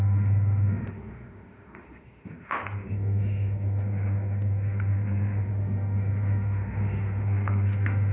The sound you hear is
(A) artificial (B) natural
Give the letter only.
A